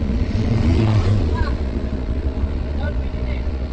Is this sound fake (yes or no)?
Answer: yes